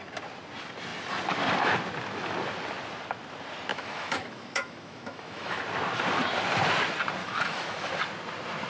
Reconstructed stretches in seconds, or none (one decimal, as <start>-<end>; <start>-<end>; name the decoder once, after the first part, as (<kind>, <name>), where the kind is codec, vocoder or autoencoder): 3.7-5.6 (autoencoder, DAC-VAE); 7.2-7.9